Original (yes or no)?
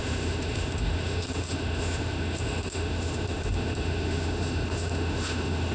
no